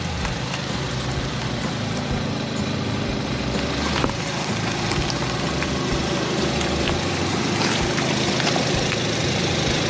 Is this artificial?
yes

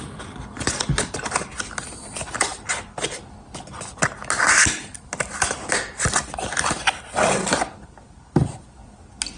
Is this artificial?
no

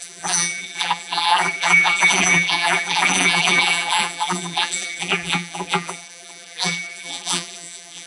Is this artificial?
yes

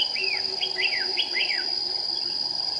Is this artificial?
no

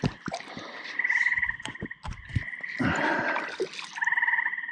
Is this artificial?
no